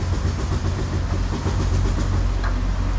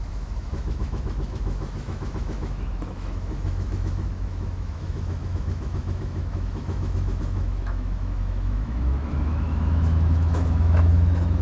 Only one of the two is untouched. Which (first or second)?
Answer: first